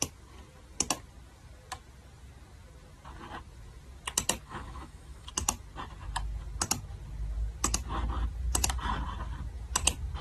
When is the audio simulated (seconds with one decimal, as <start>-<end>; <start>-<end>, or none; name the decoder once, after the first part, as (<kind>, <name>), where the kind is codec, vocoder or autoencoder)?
4.5-5.3 (autoencoder, DAC-VAE)